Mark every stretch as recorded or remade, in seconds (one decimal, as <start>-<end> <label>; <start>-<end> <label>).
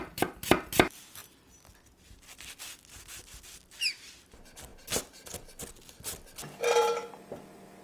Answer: 0.0-7.8 recorded